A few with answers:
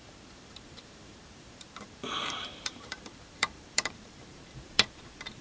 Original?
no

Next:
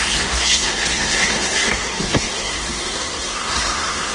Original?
no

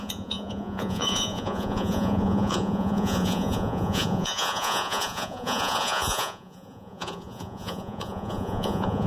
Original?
no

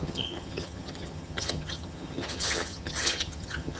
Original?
no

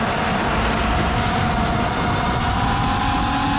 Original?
yes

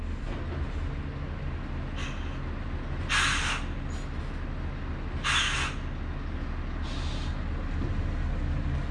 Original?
yes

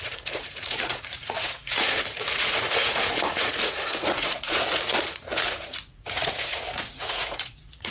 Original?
no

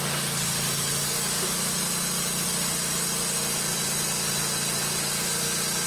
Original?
yes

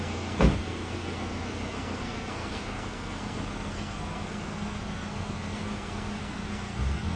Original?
no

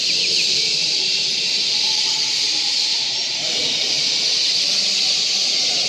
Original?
no